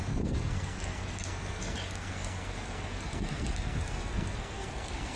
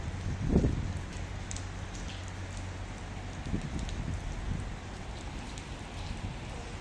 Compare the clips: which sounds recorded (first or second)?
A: second